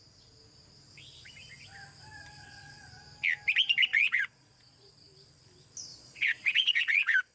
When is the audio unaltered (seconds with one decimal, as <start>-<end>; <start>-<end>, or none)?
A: 0.0-3.9; 4.9-5.9